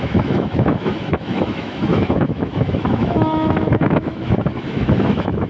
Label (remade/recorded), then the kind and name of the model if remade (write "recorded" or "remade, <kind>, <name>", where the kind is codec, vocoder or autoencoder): remade, autoencoder, DAC-VAE